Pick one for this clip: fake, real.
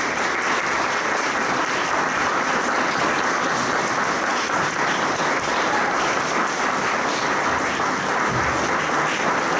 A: real